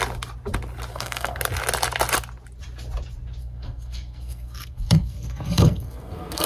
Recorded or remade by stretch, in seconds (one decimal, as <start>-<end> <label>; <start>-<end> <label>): 0.0-0.9 recorded; 0.9-1.4 remade; 1.4-3.4 recorded; 3.4-6.5 remade